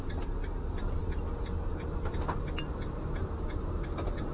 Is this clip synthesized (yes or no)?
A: no